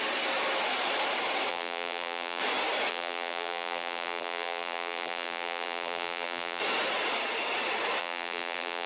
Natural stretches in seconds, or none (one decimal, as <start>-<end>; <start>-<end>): 0.0-1.5; 2.4-2.9; 6.6-8.0